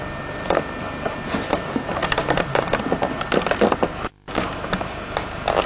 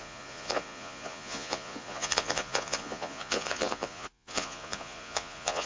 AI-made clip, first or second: second